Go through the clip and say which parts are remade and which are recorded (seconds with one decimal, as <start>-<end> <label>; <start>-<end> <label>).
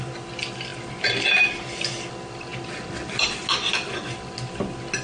0.0-5.0 recorded